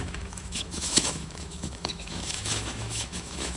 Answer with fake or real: fake